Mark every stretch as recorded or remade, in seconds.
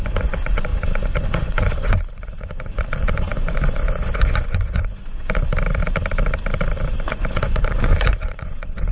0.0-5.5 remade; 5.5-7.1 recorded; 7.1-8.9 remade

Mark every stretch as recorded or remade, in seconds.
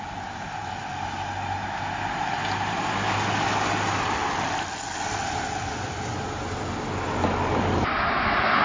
0.0-8.6 recorded